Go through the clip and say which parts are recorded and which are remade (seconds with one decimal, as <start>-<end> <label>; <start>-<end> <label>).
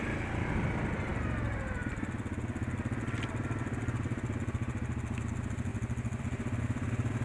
0.0-7.2 recorded